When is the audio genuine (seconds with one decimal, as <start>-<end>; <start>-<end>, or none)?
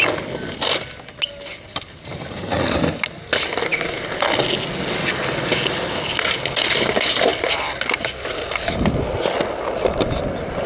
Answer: 0.0-1.7; 2.8-10.7